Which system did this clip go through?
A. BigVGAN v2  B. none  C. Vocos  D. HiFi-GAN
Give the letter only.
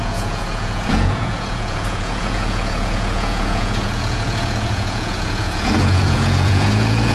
C